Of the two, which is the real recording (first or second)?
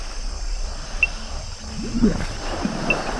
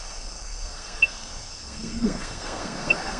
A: first